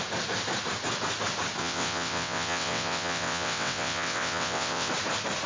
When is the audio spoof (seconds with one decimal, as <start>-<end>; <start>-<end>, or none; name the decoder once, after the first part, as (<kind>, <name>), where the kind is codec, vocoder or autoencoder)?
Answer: 1.6-4.9 (vocoder, WaveNeXt)